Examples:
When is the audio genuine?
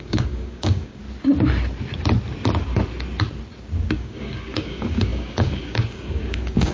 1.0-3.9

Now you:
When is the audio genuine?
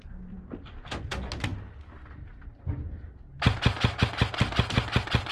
0.0-5.3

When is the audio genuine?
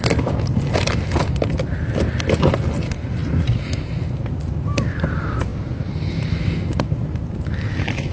0.0-8.1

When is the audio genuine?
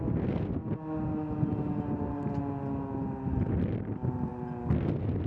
0.0-5.3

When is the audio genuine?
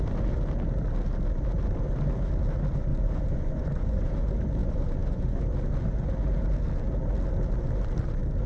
0.0-2.9; 4.1-4.6; 5.4-8.5